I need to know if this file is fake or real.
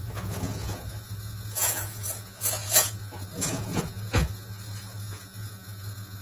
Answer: fake